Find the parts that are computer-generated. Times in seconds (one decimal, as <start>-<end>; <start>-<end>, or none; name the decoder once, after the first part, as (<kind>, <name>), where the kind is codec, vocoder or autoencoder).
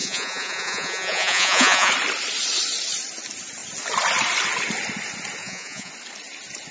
0.0-1.9 (vocoder, Vocos); 5.4-5.9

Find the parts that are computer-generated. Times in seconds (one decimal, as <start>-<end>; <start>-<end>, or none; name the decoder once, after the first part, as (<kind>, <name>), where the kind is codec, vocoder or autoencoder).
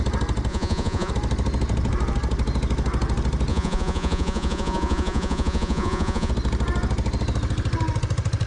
0.5-1.1 (vocoder, Vocos); 3.5-6.3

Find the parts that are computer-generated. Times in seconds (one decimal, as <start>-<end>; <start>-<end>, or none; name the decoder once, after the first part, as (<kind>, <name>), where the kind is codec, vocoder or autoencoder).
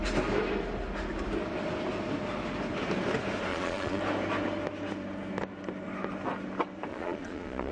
3.5-4.0 (vocoder, Vocos); 6.9-7.7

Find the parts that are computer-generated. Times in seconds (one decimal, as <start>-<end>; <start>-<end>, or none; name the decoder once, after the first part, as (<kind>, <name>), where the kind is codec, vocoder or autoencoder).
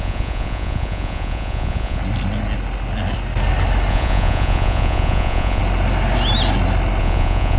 0.0-2.0 (vocoder, Vocos); 3.9-5.6; 7.0-7.6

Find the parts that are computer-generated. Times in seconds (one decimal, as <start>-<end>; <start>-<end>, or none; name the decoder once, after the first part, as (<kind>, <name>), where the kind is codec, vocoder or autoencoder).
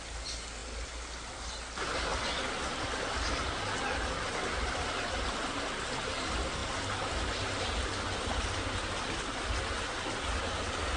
none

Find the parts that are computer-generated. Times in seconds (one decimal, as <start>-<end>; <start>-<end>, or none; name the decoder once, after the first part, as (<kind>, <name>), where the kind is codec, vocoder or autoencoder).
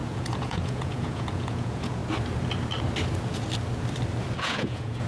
0.0-2.0 (vocoder, Vocos); 4.4-5.1